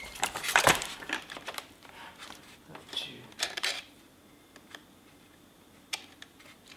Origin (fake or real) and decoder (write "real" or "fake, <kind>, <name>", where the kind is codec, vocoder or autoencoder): fake, vocoder, BigVGAN v2